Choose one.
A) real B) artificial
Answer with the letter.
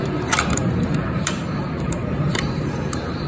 B